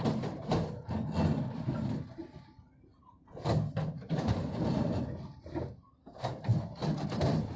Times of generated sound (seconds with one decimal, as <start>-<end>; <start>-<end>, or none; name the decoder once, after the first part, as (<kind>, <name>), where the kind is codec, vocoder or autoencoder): 2.2-5.0 (vocoder, BigVGAN v2); 6.5-7.6

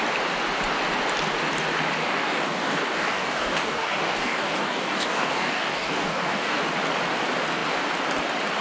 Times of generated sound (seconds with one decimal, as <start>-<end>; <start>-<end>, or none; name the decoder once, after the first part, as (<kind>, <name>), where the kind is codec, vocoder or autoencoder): 2.0-6.6 (codec, DAC)

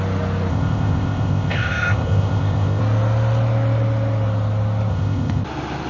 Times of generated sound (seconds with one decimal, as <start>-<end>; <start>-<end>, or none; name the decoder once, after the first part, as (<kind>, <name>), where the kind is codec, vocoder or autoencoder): 0.5-2.8 (codec, ZipCodec); 4.9-5.4

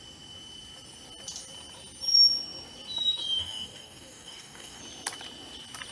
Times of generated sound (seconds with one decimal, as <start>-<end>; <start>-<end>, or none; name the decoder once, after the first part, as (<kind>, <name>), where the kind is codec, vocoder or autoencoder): 3.4-4.8 (codec, DAC)

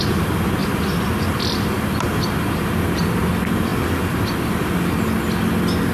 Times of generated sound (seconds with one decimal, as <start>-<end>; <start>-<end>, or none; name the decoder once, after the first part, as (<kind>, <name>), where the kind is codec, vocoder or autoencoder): 0.6-3.3 (vocoder, BigVGAN v2)

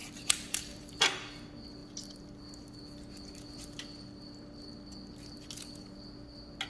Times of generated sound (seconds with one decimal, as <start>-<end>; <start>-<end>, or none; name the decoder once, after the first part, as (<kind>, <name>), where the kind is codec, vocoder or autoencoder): 0.0-1.3 (vocoder, BigVGAN v2)

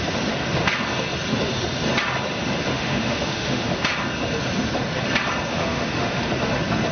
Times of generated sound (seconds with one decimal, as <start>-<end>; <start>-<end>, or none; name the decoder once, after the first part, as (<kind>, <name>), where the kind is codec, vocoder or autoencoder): 2.7-3.7 (autoencoder, DAC-VAE); 5.5-6.2